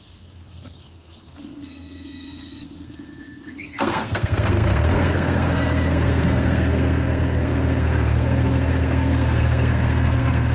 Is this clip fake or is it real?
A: fake